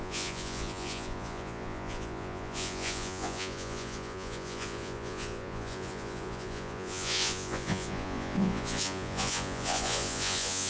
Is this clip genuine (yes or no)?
no